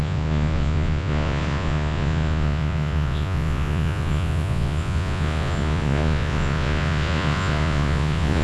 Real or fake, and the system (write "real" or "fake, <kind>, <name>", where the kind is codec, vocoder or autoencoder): fake, vocoder, Vocos